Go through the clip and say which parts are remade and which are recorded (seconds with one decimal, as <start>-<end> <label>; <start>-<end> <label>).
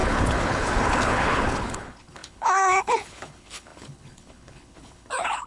0.0-5.5 remade